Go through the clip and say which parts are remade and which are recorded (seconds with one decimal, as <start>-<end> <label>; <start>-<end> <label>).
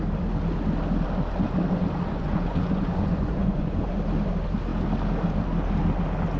0.0-2.1 recorded; 2.1-3.9 remade; 3.9-6.4 recorded